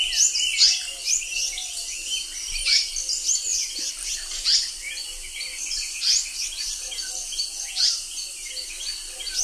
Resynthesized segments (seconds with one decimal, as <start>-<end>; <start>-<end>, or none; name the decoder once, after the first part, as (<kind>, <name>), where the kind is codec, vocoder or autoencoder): 1.7-2.9 (vocoder, BigVGAN v2); 3.5-4.1